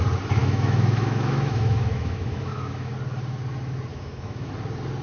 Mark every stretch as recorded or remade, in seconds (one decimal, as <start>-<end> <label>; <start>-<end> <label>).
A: 0.0-0.4 recorded; 0.4-2.9 remade; 2.9-3.9 recorded; 3.9-4.5 remade; 4.5-5.0 recorded

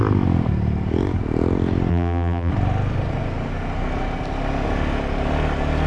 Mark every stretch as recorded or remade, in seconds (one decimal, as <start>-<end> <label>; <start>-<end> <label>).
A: 0.0-1.9 recorded; 1.9-2.5 remade; 2.5-5.9 recorded

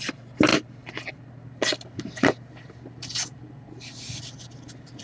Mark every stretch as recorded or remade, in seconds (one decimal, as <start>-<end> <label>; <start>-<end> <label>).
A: 0.0-5.0 recorded

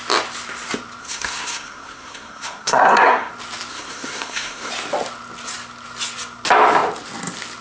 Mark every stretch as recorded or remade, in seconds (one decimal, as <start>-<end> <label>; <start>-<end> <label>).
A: 0.0-1.0 recorded; 1.0-3.3 remade; 3.3-3.7 recorded; 3.7-4.7 remade; 4.7-7.6 recorded

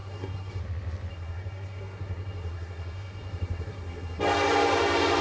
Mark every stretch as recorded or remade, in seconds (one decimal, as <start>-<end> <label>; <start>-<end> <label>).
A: 0.0-0.6 remade; 0.6-1.1 recorded; 1.1-4.2 remade; 4.2-5.2 recorded

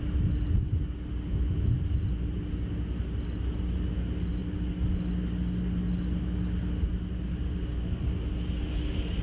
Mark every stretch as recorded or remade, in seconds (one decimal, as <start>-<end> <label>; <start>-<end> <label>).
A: 0.0-9.2 recorded

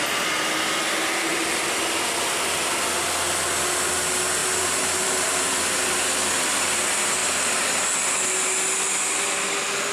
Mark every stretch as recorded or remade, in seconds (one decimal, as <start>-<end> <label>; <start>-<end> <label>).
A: 0.0-1.3 recorded; 1.3-1.8 remade; 1.8-4.4 recorded; 4.4-5.6 remade; 5.6-7.2 recorded; 7.2-7.8 remade; 7.8-9.9 recorded

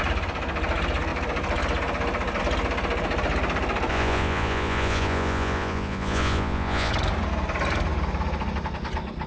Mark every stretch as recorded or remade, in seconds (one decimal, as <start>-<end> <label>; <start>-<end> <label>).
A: 0.0-3.9 recorded; 3.9-6.9 remade; 6.9-9.3 recorded